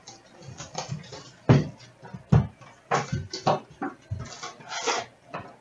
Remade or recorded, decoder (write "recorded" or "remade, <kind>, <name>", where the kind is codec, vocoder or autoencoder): recorded